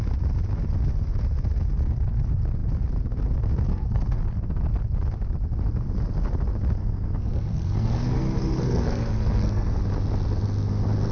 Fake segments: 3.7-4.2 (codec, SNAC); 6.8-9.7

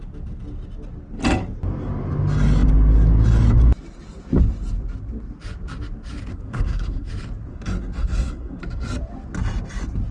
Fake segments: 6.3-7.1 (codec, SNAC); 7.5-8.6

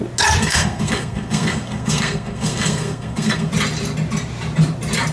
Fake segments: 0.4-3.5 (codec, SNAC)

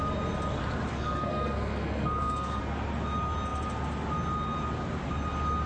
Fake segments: 0.9-2.6 (codec, SNAC)

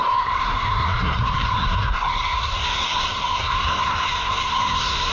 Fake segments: 0.0-5.1 (codec, SNAC)

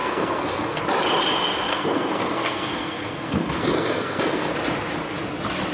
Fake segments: 0.0-0.8 (codec, SNAC); 1.7-4.5

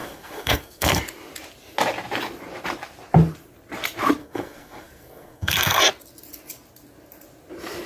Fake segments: 0.0-1.0 (codec, SNAC); 4.2-5.8

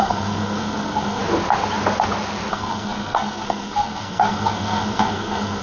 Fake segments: 0.0-1.2 (codec, SNAC); 2.5-5.6